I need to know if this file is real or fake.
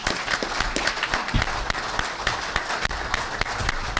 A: real